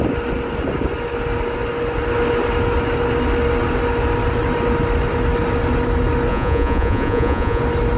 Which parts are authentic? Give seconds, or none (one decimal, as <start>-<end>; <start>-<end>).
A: 0.0-6.3; 7.6-8.0